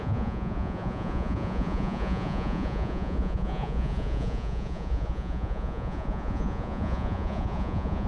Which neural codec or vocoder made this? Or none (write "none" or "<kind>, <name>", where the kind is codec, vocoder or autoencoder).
vocoder, Vocos